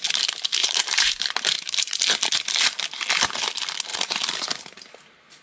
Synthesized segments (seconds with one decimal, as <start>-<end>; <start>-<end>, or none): 0.6-2.1; 3.9-4.9